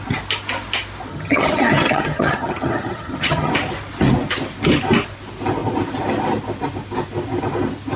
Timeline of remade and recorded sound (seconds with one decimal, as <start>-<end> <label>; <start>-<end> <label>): 0.0-1.1 recorded; 1.1-3.5 remade; 3.5-8.0 recorded